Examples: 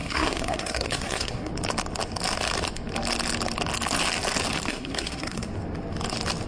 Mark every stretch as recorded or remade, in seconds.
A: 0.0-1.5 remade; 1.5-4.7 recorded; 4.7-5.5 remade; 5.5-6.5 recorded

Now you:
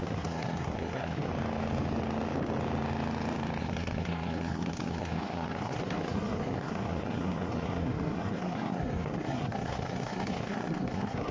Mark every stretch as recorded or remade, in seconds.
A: 0.0-1.3 remade; 1.3-3.6 recorded; 3.6-11.3 remade

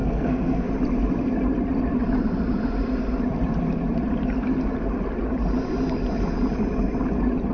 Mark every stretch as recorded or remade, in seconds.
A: 0.0-0.7 remade; 0.7-7.5 recorded

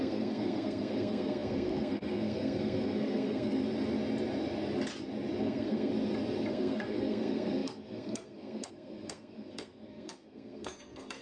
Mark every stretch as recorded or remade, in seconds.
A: 0.0-3.6 remade; 3.6-5.4 recorded; 5.4-5.9 remade; 5.9-6.5 recorded; 6.5-11.2 remade